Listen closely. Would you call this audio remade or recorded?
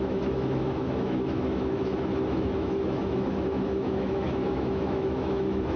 remade